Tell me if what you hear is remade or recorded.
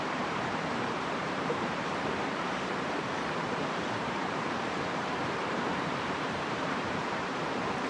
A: remade